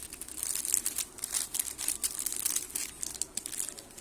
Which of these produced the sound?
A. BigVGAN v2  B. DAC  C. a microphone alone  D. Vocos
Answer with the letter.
C